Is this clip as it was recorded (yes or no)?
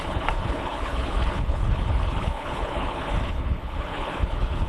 no